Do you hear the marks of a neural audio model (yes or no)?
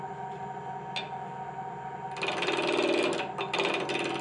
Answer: no